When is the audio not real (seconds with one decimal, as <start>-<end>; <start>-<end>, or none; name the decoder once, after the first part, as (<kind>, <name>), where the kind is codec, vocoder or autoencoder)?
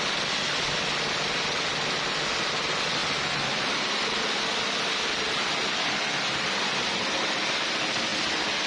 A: none